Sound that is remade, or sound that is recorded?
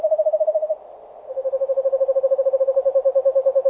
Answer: recorded